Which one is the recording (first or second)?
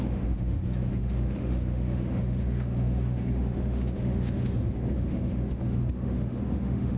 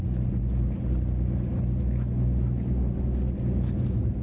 second